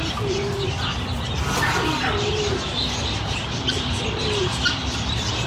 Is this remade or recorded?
recorded